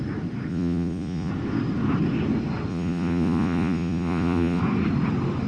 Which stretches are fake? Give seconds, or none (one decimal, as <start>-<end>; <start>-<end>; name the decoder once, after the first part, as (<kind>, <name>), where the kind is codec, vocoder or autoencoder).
0.5-1.3 (vocoder, Vocos); 2.7-4.6